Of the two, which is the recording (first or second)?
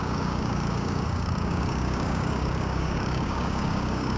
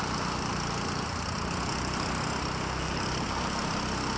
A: second